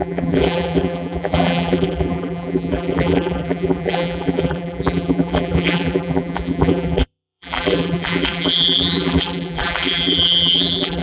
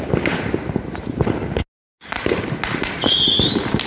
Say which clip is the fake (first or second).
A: first